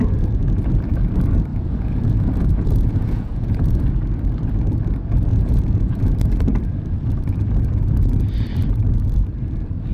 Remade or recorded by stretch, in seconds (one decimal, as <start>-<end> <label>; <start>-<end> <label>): 0.0-1.5 recorded; 1.5-3.9 remade; 3.9-5.3 recorded; 5.3-6.1 remade; 6.1-9.9 recorded